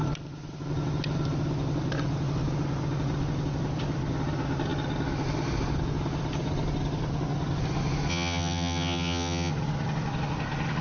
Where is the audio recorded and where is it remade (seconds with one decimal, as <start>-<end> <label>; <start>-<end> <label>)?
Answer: 0.0-8.1 recorded; 8.1-9.5 remade; 9.5-10.8 recorded